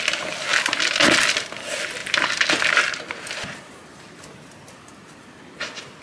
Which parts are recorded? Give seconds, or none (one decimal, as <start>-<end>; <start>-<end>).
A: 0.0-6.0